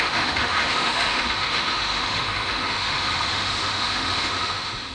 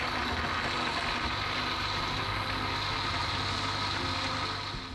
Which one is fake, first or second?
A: first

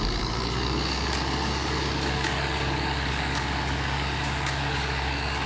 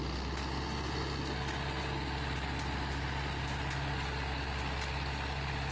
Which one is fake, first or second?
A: first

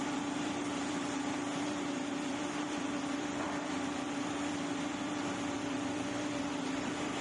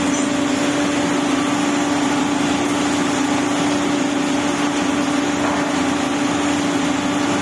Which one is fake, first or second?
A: first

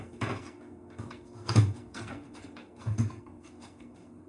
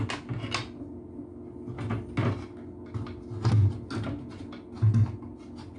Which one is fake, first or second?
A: first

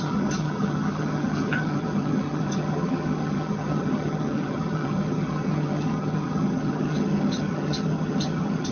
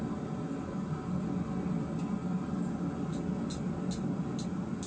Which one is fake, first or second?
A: first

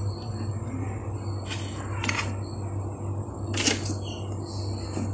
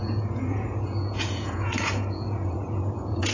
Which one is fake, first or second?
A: second